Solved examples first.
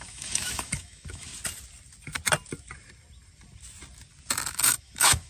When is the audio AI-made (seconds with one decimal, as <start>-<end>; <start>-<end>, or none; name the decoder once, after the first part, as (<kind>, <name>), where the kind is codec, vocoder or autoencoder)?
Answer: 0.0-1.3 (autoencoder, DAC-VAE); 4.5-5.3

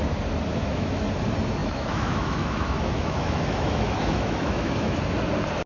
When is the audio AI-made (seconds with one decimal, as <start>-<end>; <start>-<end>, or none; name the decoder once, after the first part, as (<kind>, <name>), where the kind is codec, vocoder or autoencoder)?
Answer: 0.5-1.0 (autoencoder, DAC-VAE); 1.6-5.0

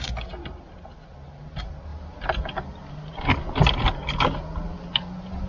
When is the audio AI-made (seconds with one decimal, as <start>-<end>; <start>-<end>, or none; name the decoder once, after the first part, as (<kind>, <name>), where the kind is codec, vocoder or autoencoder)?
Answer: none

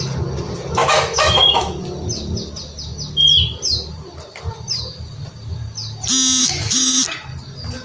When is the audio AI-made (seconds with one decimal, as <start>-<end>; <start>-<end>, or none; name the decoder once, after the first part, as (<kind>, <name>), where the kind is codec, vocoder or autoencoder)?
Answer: 0.8-1.7 (autoencoder, DAC-VAE); 6.4-7.0

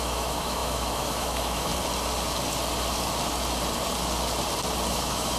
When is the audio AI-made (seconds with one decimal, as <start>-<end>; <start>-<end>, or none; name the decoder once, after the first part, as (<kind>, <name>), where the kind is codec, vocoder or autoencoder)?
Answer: 0.0-1.7 (autoencoder, DAC-VAE); 4.9-5.4

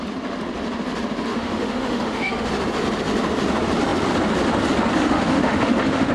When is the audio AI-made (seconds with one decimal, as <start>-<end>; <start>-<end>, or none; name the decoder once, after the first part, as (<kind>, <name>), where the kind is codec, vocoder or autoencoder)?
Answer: 1.3-2.5 (autoencoder, DAC-VAE); 5.1-6.1